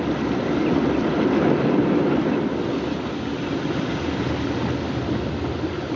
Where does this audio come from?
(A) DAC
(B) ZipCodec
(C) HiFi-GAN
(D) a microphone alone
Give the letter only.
D